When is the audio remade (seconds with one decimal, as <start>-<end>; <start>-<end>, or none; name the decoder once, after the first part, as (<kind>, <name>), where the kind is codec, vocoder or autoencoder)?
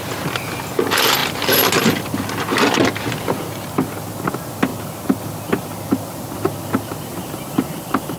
7.1-8.2 (vocoder, BigVGAN v2)